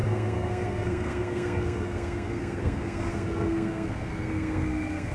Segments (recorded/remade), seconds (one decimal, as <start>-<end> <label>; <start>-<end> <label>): 0.0-5.1 remade